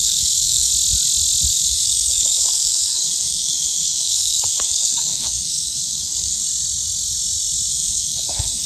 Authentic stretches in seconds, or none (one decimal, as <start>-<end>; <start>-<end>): 0.7-1.5; 6.4-7.7